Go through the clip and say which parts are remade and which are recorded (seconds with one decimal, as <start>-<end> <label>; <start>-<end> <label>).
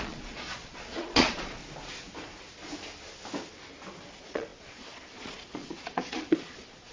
0.0-1.6 remade; 1.6-4.1 recorded; 4.1-6.9 remade